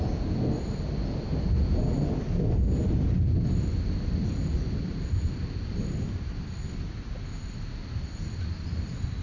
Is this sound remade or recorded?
recorded